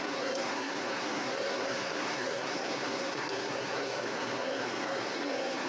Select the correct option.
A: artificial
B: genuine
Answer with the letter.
A